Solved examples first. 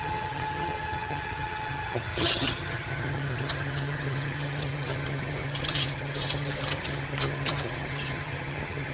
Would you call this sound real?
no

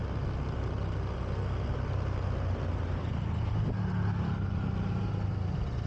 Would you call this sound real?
yes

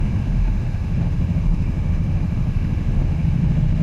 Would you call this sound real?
no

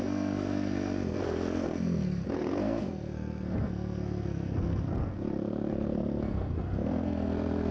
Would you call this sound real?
no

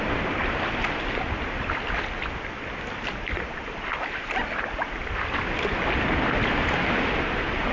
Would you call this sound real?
yes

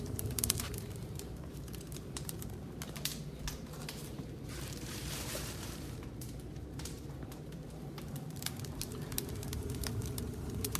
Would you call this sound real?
no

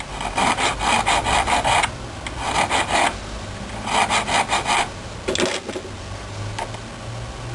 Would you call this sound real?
yes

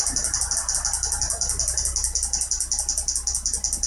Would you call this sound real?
yes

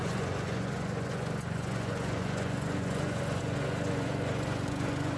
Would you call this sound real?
no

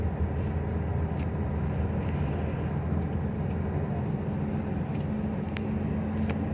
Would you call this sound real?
yes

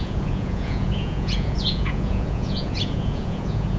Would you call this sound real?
no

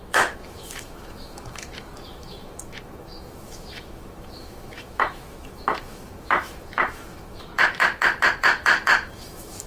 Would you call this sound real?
no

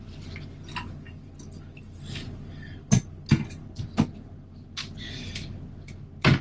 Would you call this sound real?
yes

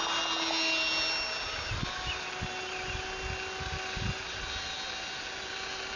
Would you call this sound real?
yes